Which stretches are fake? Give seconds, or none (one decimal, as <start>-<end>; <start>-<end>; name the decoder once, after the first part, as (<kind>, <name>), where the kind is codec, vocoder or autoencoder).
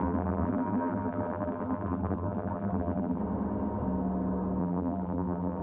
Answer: 0.0-3.2 (vocoder, BigVGAN v2); 4.6-5.6